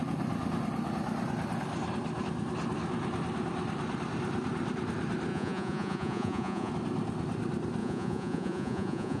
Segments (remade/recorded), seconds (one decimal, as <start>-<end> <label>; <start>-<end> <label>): 0.0-5.3 recorded; 5.3-6.7 remade; 6.7-7.8 recorded; 7.8-9.2 remade